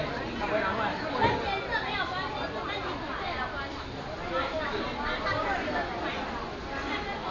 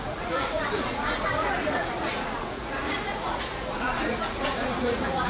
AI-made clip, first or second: second